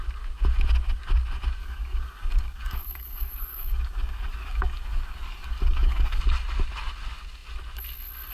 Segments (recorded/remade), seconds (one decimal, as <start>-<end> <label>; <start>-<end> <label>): 0.0-1.6 recorded; 1.6-6.2 remade; 6.2-8.3 recorded